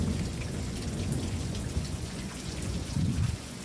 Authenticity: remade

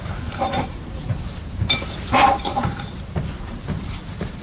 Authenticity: remade